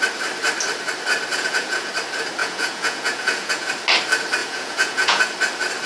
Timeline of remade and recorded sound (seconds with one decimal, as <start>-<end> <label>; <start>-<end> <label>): 0.0-1.3 recorded; 1.3-1.9 remade; 1.9-2.4 recorded; 2.4-3.7 remade; 3.7-4.4 recorded; 4.4-5.2 remade; 5.2-5.9 recorded